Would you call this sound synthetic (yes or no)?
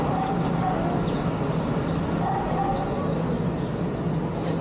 no